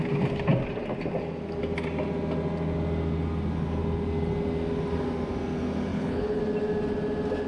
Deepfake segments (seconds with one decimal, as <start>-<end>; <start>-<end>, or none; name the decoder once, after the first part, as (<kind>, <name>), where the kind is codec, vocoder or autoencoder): 5.9-6.4 (codec, HILCodec)